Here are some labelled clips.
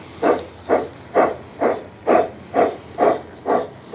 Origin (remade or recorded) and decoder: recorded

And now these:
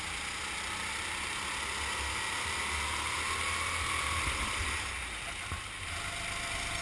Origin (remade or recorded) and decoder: recorded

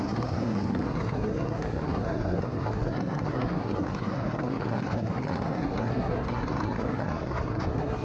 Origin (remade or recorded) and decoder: remade, codec, SNAC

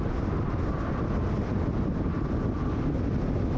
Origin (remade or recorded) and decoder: recorded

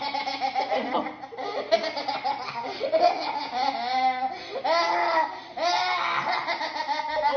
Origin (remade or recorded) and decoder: recorded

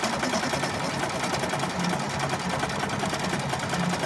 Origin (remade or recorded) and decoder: recorded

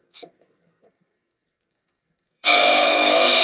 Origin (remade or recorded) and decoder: remade, codec, SNAC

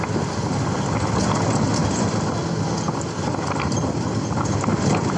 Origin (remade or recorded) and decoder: recorded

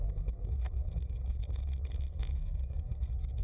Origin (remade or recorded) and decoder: remade, codec, SNAC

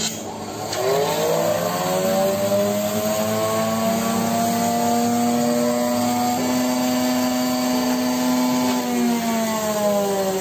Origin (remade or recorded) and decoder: recorded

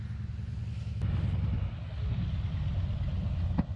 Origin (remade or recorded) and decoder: recorded